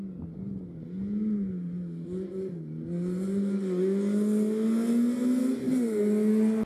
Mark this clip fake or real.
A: real